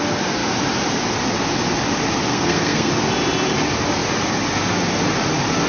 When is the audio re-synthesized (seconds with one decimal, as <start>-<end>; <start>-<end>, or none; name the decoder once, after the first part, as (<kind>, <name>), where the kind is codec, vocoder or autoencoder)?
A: 2.3-2.9 (codec, SNAC)